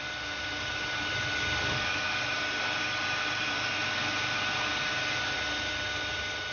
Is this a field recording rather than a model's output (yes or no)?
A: yes